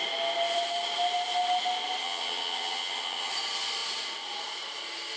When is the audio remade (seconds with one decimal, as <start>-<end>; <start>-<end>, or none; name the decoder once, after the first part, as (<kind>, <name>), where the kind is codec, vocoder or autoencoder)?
2.0-3.3 (vocoder, HiFi-GAN)

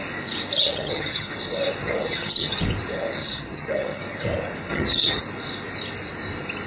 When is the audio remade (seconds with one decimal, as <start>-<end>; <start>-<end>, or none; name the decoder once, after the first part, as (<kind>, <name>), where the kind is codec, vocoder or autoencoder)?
0.6-1.3 (vocoder, HiFi-GAN); 1.8-2.6; 3.2-4.0; 4.7-5.2

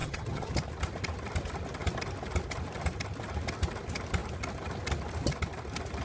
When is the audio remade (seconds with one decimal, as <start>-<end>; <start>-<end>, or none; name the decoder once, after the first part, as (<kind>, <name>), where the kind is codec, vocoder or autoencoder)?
0.0-0.5 (vocoder, HiFi-GAN)

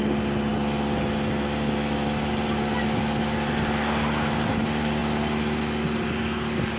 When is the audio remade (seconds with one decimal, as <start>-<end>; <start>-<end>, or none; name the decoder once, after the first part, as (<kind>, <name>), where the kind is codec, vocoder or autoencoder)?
none

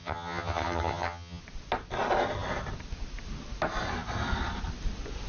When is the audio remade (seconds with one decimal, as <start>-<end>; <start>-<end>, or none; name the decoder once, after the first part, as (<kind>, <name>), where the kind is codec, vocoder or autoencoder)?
0.0-1.4 (vocoder, HiFi-GAN)

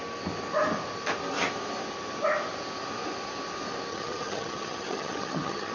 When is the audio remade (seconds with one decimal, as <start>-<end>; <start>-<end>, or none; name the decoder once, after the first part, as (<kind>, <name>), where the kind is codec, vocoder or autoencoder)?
3.9-5.7 (vocoder, HiFi-GAN)